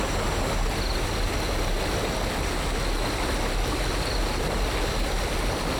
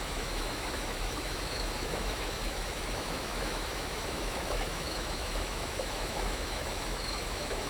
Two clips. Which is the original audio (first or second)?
first